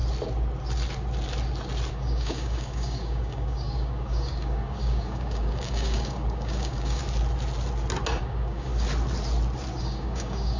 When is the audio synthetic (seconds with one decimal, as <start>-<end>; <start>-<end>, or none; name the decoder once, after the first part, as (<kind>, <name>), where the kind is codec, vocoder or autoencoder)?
1.9-7.0 (codec, DAC); 8.2-8.7; 9.8-10.6